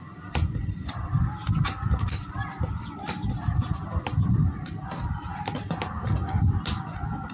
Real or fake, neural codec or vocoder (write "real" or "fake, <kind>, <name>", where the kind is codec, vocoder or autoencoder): fake, vocoder, BigVGAN v2